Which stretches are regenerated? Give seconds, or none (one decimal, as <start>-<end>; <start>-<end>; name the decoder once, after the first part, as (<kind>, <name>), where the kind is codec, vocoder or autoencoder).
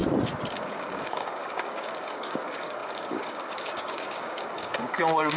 0.5-5.4 (codec, DAC)